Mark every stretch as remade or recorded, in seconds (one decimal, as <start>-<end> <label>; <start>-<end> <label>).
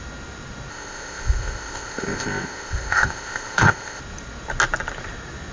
0.0-0.7 recorded; 0.7-4.0 remade; 4.0-5.5 recorded